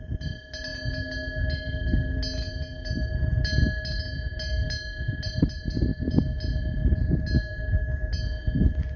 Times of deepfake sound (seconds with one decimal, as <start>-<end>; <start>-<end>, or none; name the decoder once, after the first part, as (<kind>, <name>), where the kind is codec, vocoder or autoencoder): none